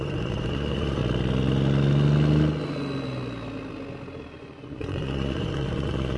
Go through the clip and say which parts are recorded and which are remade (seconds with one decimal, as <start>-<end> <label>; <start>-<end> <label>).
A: 0.0-1.0 remade; 1.0-4.2 recorded; 4.2-6.2 remade